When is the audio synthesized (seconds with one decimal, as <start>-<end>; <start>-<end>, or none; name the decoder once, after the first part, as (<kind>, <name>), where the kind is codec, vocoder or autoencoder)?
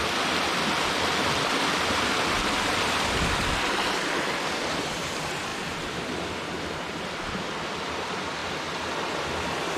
none